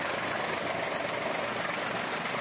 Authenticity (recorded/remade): recorded